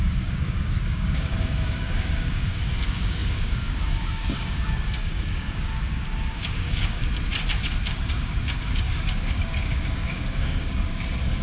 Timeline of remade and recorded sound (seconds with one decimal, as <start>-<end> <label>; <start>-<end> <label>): 0.0-7.0 remade; 7.0-7.9 recorded; 7.9-11.4 remade